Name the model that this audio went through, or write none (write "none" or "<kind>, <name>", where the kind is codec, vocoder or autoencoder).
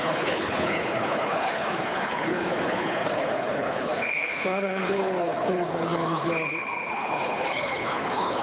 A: codec, HILCodec